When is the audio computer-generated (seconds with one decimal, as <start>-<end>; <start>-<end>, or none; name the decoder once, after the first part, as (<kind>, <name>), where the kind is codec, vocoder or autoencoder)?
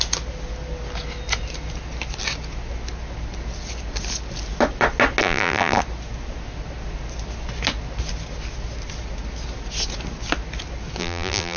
5.2-5.8 (vocoder, BigVGAN v2); 11.0-11.6